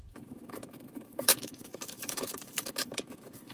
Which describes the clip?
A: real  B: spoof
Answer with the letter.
B